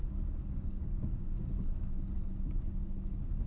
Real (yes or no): yes